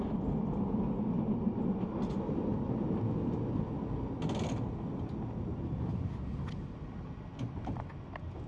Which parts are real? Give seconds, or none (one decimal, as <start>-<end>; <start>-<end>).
0.0-8.5